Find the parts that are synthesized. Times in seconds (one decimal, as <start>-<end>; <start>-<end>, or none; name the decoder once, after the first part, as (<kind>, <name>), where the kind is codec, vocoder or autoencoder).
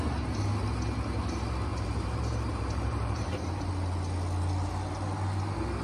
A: 1.7-3.7 (vocoder, BigVGAN v2)